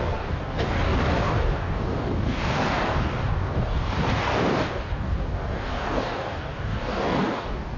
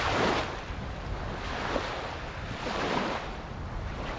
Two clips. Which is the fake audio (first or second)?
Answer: first